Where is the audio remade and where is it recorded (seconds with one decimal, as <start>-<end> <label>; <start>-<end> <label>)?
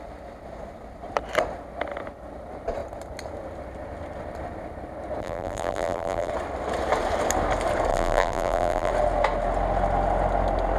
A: 0.0-5.2 recorded; 5.2-6.3 remade; 6.3-7.9 recorded; 7.9-8.9 remade; 8.9-10.8 recorded